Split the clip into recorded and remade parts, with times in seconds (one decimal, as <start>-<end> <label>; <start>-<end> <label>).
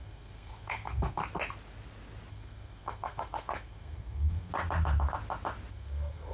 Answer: 0.0-1.2 remade; 1.2-2.3 recorded; 2.3-4.5 remade; 4.5-5.7 recorded; 5.7-6.3 remade